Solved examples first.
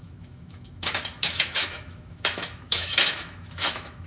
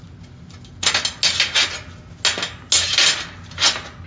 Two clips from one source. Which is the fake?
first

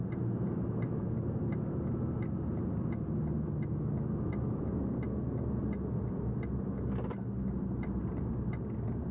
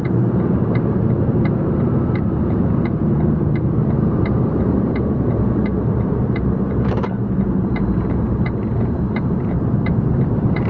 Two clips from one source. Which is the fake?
second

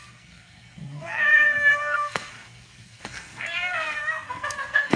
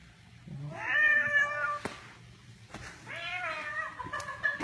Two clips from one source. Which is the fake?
first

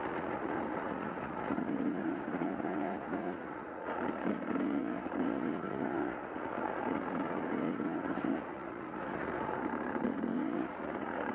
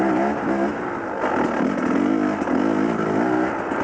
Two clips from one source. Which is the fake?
first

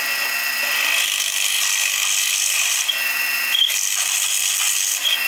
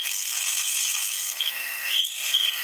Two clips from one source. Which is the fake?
second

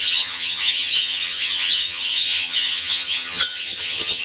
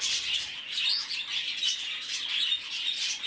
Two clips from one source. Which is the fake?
first